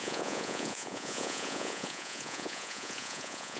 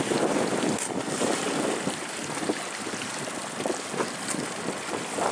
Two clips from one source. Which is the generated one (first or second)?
first